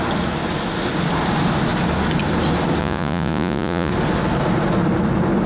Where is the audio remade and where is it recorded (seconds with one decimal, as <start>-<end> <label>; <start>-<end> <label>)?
0.0-2.8 recorded; 2.8-3.9 remade; 3.9-5.5 recorded